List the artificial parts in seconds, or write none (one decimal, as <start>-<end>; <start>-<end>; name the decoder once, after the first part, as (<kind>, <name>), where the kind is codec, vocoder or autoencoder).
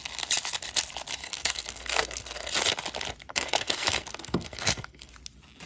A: 1.2-2.5 (codec, SNAC); 3.3-5.1